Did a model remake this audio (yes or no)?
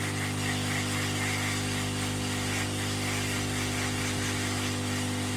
no